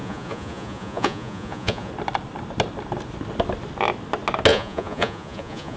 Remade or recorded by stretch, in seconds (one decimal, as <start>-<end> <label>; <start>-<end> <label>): 0.0-1.9 remade; 1.9-4.5 recorded; 4.5-5.8 remade